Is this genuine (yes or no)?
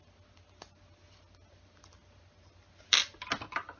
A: yes